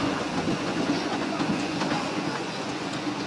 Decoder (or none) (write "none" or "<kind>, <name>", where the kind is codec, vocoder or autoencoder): vocoder, Vocos